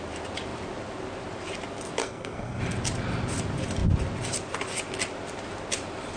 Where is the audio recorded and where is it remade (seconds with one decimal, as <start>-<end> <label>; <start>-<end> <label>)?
0.0-2.0 recorded; 2.0-2.6 remade; 2.6-6.2 recorded